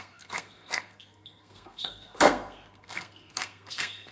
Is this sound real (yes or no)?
no